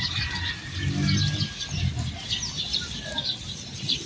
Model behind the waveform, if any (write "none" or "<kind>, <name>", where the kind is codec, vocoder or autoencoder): none